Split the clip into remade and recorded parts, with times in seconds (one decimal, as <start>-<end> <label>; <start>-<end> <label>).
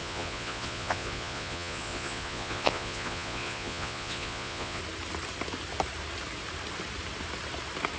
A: 0.0-4.8 remade; 4.8-8.0 recorded